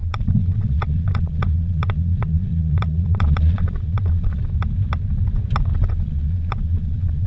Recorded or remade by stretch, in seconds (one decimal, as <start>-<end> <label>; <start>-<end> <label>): 0.0-4.4 remade; 4.4-5.7 recorded; 5.7-7.3 remade